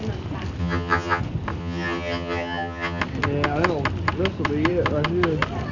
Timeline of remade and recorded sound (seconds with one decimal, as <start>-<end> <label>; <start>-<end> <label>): 0.0-0.6 recorded; 0.6-1.2 remade; 1.2-1.6 recorded; 1.6-3.0 remade; 3.0-5.7 recorded